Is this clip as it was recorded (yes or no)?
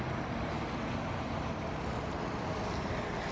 yes